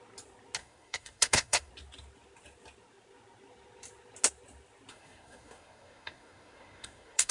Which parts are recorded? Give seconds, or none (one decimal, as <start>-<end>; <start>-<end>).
0.0-0.6; 1.7-4.9